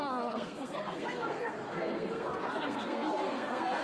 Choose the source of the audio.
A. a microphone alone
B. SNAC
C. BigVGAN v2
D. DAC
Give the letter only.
B